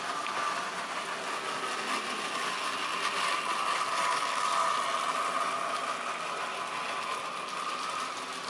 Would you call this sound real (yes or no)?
yes